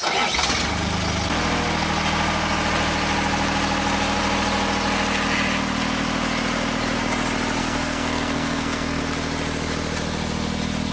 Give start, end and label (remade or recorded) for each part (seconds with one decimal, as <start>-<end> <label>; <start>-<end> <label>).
0.0-7.6 recorded; 7.6-9.0 remade; 9.0-10.9 recorded

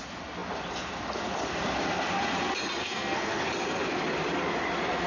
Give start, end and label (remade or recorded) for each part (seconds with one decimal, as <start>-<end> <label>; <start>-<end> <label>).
0.0-2.8 recorded; 2.8-3.4 remade; 3.4-5.1 recorded

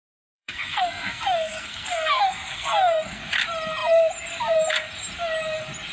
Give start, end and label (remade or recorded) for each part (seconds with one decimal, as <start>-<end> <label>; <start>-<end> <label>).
0.0-3.2 remade; 3.2-5.9 recorded

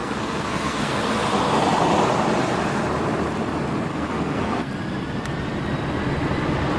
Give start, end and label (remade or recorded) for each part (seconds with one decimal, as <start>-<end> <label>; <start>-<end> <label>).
0.0-1.1 remade; 1.1-3.9 recorded; 3.9-4.7 remade; 4.7-6.8 recorded